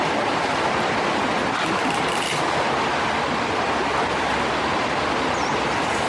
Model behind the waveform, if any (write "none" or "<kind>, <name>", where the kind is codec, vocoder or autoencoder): none